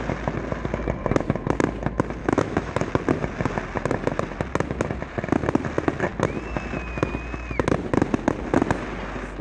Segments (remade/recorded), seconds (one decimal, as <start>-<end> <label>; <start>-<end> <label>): 0.0-2.2 recorded; 2.2-2.9 remade; 2.9-9.4 recorded